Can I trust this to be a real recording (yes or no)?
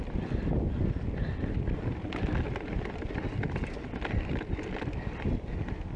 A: yes